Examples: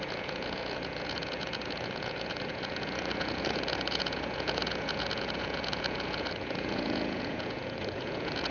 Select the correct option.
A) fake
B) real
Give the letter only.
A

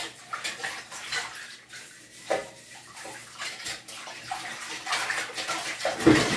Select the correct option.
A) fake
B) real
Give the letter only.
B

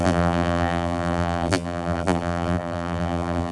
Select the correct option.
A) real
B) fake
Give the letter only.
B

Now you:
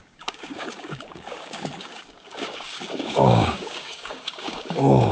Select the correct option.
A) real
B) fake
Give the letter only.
B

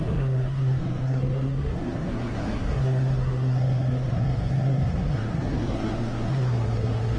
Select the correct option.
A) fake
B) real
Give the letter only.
A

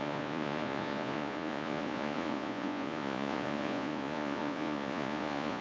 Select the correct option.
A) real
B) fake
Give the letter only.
B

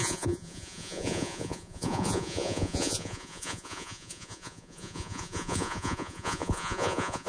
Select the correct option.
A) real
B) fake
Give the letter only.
B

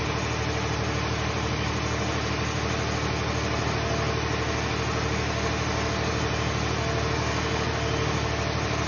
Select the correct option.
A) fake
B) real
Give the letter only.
B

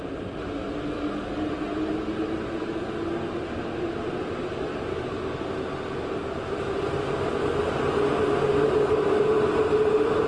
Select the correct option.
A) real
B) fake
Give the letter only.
A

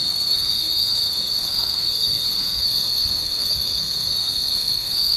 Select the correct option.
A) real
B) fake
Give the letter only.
B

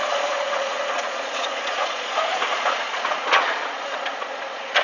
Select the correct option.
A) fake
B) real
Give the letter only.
A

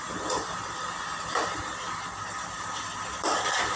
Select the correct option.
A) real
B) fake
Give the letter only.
B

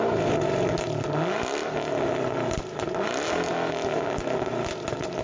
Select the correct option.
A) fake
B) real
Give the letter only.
B